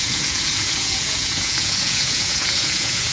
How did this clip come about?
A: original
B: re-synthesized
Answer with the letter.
B